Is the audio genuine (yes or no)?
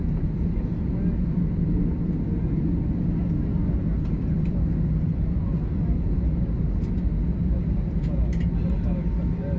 yes